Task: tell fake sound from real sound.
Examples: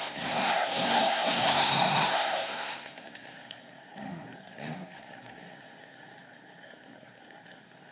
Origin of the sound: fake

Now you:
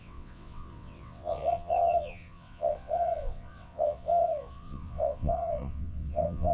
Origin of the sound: fake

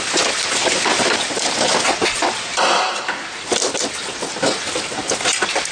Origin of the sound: real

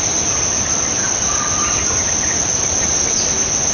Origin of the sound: real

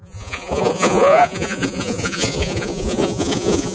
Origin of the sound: fake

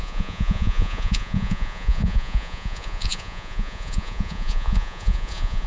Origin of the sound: fake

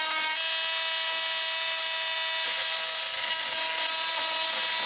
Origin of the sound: real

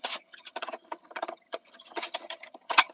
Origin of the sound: fake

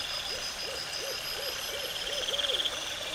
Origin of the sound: real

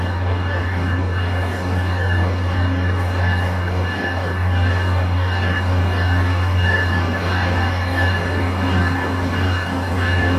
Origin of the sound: fake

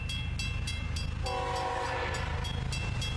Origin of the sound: real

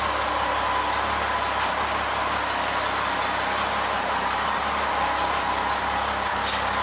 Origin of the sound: real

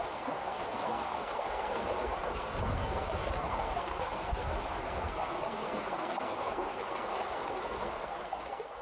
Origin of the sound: fake